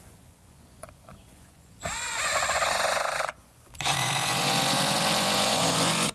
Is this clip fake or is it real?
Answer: fake